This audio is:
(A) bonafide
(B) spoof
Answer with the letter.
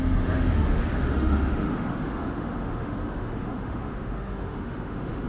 B